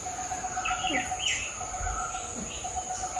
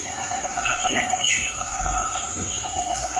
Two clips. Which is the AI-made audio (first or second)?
second